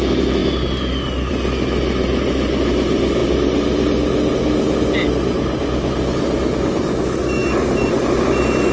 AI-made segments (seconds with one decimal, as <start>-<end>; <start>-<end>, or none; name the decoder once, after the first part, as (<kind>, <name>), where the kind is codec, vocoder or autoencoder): none